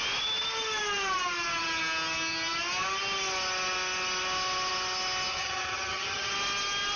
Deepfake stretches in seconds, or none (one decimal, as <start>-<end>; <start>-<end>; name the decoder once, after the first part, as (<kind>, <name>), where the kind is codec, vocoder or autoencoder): 5.3-6.3 (vocoder, HiFi-GAN)